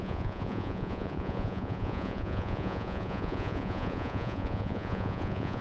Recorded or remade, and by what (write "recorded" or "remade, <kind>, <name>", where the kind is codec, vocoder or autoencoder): remade, vocoder, Vocos